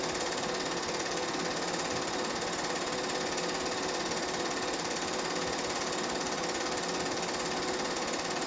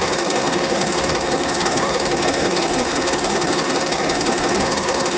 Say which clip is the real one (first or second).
first